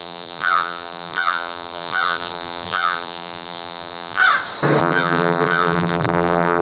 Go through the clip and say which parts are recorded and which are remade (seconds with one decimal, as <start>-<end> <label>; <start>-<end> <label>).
0.0-4.2 remade; 4.2-4.8 recorded; 4.8-6.6 remade